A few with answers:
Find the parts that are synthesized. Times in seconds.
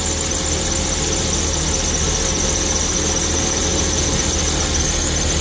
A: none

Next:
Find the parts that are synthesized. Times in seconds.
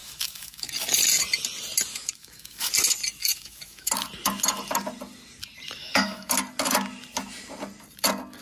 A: 0.0-0.7 (autoencoder, DAC-VAE); 1.9-2.7; 3.2-3.9; 5.8-6.3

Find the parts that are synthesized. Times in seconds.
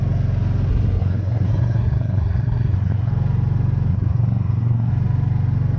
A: 0.7-3.1 (codec, SNAC); 3.9-4.9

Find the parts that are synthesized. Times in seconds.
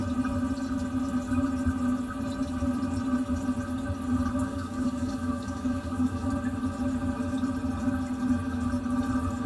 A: 4.5-6.3 (codec, DAC)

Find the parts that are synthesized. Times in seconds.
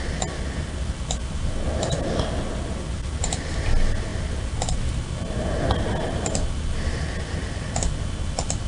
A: none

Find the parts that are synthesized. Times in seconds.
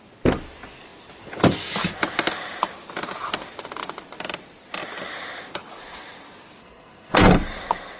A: 6.6-7.4 (codec, SNAC)